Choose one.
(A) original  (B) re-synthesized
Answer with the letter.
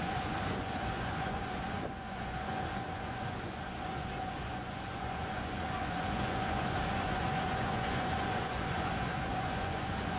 B